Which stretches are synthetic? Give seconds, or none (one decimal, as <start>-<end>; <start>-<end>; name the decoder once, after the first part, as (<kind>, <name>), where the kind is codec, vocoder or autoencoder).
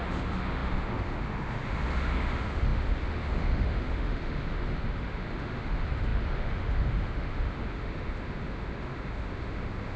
0.0-10.0 (autoencoder, DAC-VAE)